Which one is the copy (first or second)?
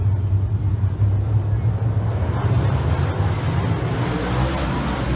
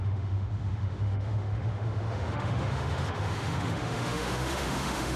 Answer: second